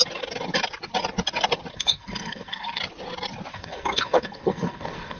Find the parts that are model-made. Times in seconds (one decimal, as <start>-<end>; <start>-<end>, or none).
1.7-2.8; 3.5-5.2